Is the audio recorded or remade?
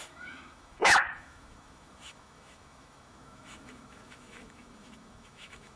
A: remade